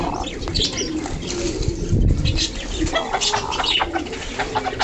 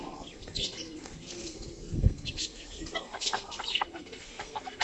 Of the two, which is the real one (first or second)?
first